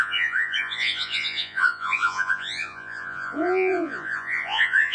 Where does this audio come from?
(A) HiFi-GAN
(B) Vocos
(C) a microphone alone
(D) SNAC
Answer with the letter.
B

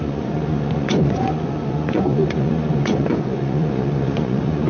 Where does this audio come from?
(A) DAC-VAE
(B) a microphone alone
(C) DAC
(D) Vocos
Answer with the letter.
D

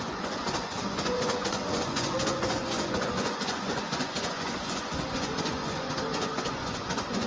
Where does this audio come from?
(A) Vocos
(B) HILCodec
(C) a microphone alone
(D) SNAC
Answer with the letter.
A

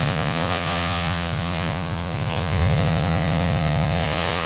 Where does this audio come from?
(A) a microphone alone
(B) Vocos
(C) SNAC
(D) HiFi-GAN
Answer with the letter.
B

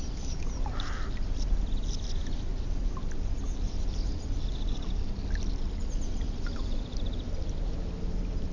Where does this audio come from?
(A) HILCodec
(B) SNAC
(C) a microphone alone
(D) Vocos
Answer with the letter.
C